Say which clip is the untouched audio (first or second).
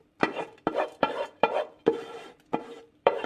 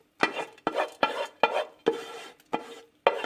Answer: second